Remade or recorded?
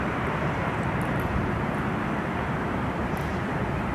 remade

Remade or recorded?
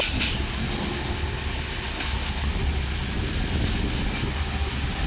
recorded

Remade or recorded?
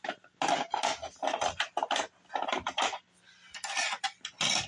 recorded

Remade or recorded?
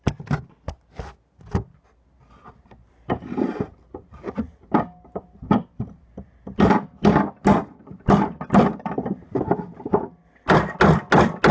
recorded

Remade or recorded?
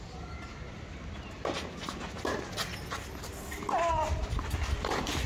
recorded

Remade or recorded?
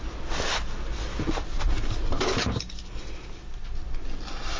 recorded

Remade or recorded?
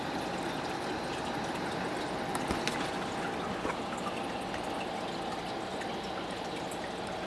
recorded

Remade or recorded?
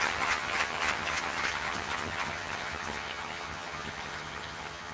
remade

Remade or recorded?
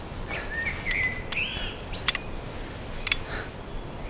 recorded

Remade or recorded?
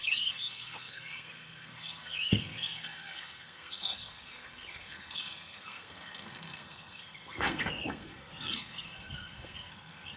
remade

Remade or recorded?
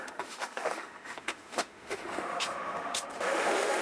remade